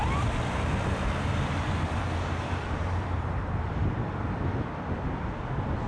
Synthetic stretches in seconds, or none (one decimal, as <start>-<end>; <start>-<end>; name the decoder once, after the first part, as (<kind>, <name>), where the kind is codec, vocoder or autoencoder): 0.0-3.5 (vocoder, BigVGAN v2)